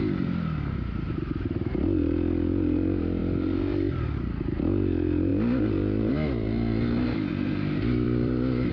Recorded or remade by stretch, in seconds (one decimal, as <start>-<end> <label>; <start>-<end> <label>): 0.0-7.3 recorded; 7.3-8.7 remade